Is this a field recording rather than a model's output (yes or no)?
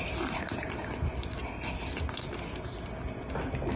yes